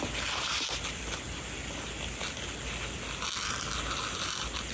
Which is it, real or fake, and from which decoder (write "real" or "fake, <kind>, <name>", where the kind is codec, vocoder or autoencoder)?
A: real